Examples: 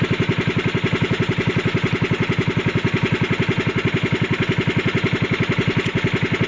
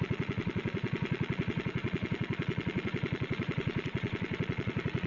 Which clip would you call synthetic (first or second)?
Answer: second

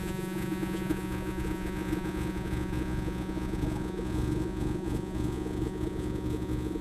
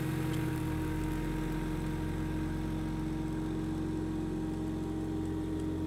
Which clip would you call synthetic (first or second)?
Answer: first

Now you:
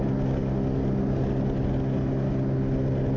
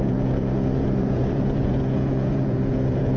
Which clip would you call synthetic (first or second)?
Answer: second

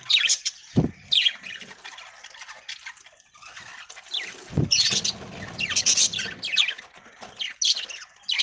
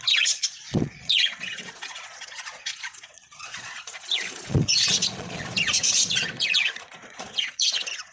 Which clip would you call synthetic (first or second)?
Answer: second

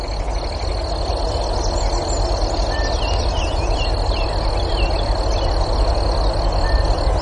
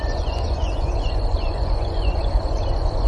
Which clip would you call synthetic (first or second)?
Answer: second